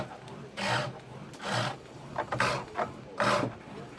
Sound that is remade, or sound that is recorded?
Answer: recorded